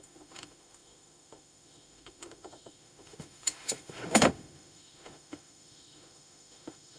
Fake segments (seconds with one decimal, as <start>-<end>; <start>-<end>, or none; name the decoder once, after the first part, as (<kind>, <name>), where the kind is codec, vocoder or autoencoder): 0.0-7.0 (autoencoder, DAC-VAE)